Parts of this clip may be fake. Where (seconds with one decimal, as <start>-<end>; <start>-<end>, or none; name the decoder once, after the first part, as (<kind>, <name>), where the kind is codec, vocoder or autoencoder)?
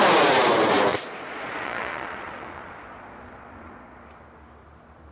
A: 0.9-4.0 (vocoder, Vocos)